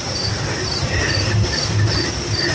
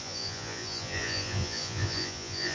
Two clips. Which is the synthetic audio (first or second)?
second